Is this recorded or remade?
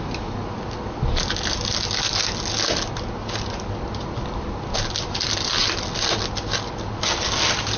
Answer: recorded